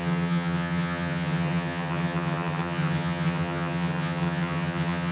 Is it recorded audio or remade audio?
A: remade